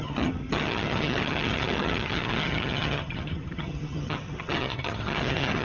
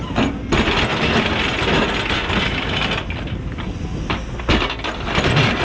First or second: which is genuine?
second